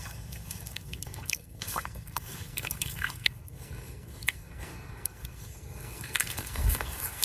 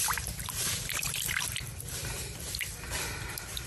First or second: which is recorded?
second